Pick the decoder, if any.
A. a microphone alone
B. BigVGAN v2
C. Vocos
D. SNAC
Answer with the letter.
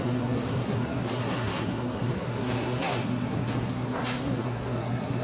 D